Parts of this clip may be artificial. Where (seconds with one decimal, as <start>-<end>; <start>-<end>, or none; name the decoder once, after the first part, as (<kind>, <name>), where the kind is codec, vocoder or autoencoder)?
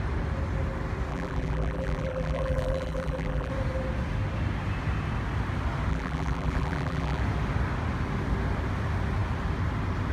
1.1-3.5 (vocoder, BigVGAN v2); 5.9-7.2